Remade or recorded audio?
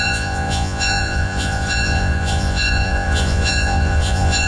remade